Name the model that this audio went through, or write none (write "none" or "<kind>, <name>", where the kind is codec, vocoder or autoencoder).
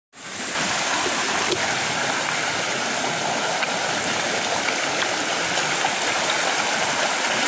none